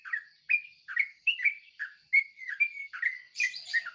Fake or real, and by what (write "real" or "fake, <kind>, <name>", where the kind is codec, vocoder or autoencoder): real